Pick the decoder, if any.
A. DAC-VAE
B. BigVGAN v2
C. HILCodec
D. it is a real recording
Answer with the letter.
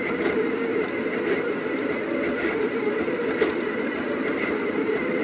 D